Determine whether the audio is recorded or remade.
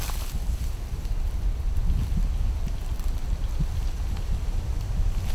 recorded